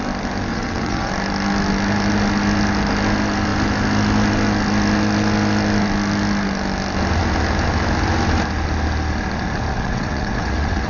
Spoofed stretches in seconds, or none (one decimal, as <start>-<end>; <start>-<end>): 0.5-1.1; 9.7-10.9